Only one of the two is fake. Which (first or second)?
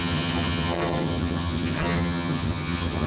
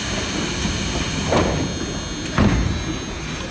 first